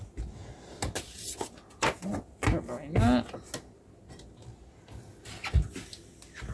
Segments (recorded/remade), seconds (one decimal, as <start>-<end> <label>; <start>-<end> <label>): 0.0-6.5 recorded